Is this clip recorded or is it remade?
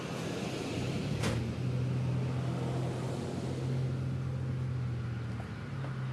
recorded